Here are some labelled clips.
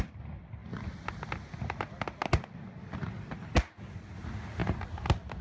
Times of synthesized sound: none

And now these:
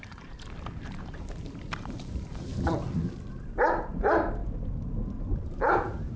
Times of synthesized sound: 0.0-2.5 (vocoder, BigVGAN v2); 3.3-4.4; 5.4-6.2

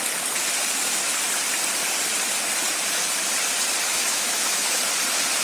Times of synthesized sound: 4.0-4.8 (autoencoder, DAC-VAE)

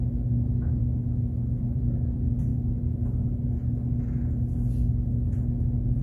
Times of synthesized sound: 0.8-1.6 (autoencoder, DAC-VAE)

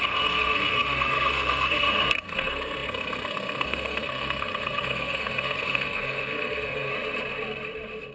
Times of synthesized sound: 0.0-6.9 (codec, SNAC)

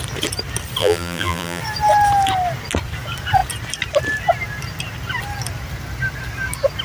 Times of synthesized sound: 0.8-1.6 (vocoder, BigVGAN v2)